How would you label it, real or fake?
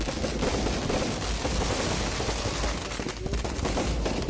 real